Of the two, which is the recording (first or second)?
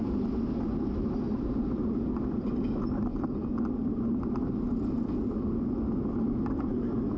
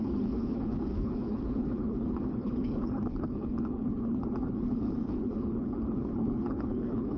first